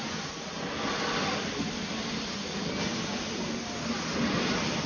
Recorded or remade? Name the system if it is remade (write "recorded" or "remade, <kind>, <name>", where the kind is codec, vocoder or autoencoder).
recorded